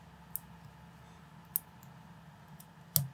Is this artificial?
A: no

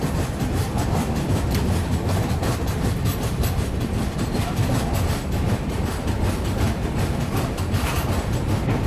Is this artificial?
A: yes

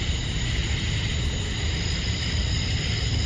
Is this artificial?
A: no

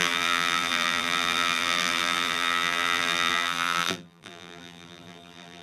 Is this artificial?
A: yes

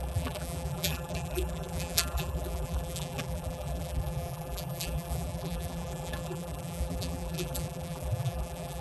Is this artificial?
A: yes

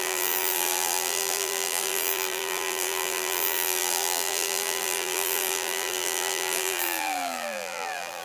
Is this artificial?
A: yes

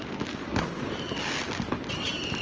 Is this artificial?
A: no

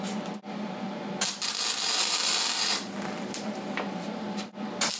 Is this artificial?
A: yes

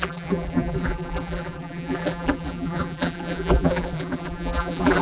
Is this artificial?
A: yes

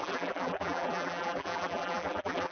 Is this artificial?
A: yes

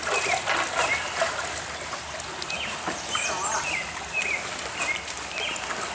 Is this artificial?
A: no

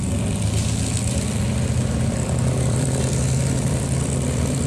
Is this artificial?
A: yes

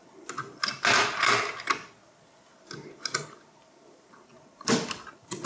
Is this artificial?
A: no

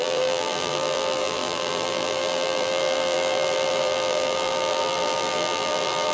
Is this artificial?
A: yes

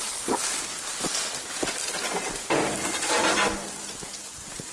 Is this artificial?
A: no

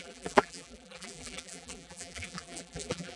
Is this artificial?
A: yes